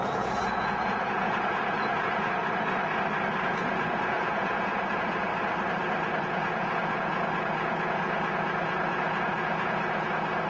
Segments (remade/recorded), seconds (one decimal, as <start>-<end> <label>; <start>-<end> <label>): 0.0-2.4 remade; 2.4-3.5 recorded; 3.5-5.3 remade; 5.3-6.2 recorded; 6.2-10.5 remade